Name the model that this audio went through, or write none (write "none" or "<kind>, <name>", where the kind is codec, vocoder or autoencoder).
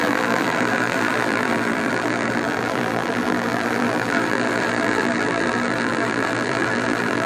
vocoder, BigVGAN v2